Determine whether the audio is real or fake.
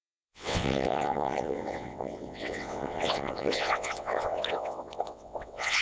fake